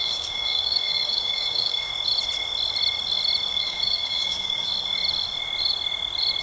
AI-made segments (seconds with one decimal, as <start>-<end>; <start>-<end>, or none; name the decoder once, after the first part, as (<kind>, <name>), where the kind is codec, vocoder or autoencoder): 0.0-1.9 (codec, DAC); 3.5-4.7